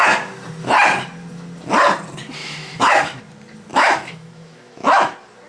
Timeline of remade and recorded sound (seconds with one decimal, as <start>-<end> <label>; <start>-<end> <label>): 0.0-2.4 recorded; 2.4-3.2 remade; 3.2-3.7 recorded; 3.7-5.1 remade; 5.1-5.5 recorded